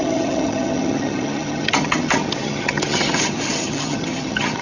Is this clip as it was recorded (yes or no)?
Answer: no